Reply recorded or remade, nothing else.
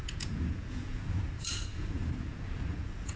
remade